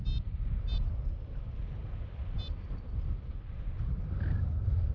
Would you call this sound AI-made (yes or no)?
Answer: no